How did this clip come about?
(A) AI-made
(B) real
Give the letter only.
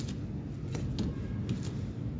B